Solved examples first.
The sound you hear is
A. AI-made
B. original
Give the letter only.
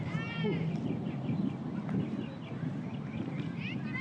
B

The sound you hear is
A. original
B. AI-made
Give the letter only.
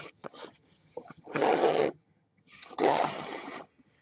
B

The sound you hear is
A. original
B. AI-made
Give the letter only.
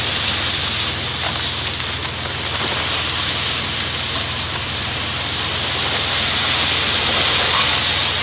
A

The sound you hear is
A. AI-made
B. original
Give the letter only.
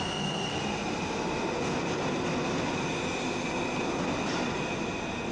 B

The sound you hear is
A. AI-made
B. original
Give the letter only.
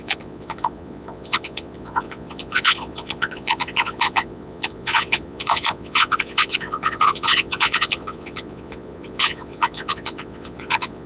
A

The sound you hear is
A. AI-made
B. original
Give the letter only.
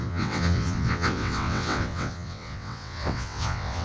A